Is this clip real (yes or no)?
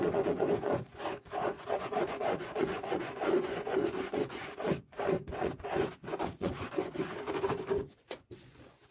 no